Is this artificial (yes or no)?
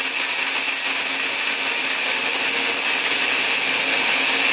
no